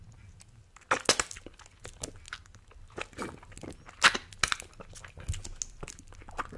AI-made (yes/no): no